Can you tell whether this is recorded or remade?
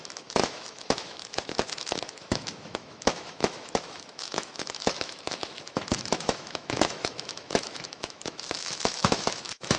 remade